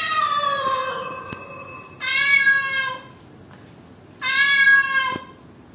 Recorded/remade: recorded